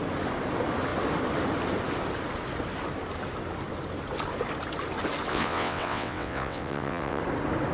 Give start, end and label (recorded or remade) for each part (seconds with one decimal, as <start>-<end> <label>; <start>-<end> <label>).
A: 0.0-5.3 recorded; 5.3-7.2 remade; 7.2-7.7 recorded